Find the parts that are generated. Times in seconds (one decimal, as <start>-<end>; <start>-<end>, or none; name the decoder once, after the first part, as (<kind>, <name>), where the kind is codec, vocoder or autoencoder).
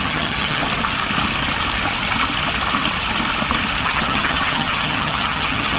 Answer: 0.0-0.6 (vocoder, HiFi-GAN); 3.8-5.8